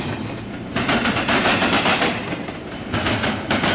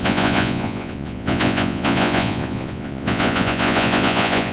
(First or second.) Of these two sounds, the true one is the first